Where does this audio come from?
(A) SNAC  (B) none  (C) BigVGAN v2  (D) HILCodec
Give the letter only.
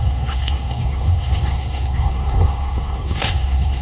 A